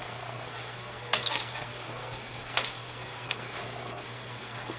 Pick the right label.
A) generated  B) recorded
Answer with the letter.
A